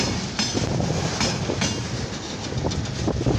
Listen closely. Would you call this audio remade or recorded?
recorded